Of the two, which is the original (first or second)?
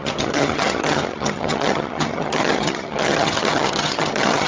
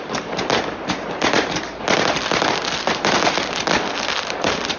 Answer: second